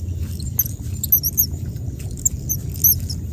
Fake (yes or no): no